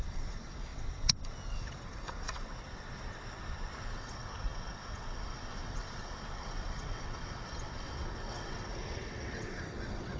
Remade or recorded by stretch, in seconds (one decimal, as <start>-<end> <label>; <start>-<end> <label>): 0.0-10.2 remade